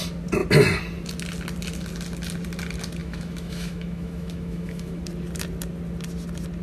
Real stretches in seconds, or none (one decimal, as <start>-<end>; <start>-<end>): 0.0-3.0; 5.0-6.6